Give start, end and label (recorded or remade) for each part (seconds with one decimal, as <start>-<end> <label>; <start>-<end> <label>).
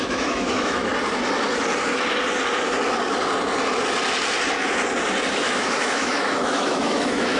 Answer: 0.0-0.9 remade; 0.9-5.3 recorded; 5.3-7.4 remade